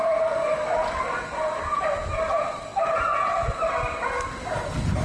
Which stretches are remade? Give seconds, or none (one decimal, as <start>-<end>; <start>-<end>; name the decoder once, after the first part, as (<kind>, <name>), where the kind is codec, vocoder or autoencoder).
none